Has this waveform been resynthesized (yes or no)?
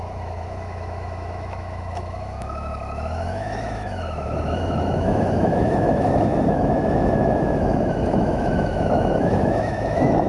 yes